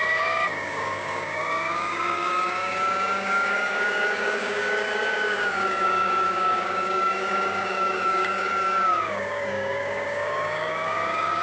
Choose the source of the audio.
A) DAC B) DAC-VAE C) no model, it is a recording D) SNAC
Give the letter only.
A